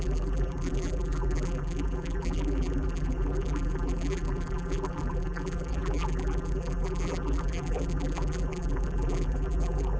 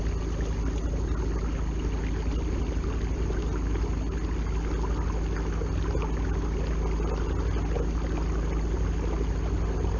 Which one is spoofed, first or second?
first